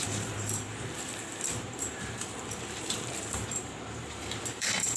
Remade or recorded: remade